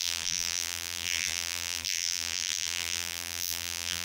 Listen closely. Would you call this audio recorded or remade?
remade